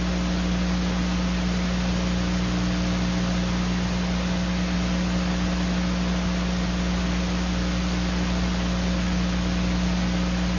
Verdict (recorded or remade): recorded